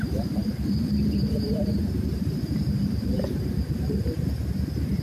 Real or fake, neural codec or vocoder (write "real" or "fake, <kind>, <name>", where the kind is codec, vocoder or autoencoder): fake, vocoder, BigVGAN v2